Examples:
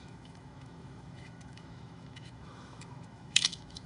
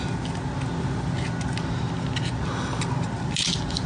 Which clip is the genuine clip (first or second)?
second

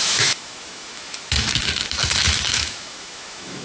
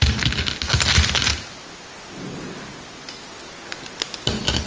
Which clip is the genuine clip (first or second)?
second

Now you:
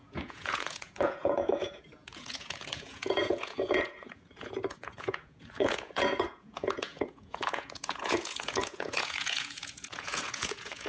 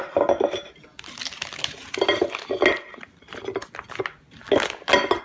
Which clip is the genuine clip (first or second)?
second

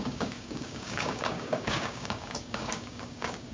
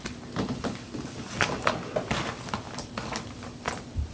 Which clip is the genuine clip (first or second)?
second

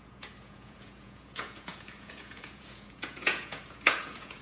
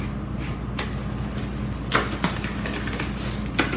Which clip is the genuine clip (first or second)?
second